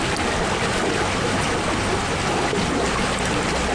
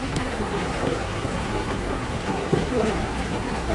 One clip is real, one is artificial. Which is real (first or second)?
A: first